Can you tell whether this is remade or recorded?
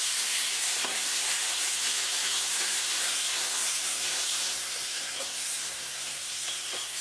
remade